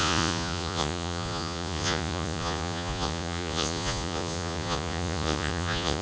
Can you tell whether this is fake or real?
fake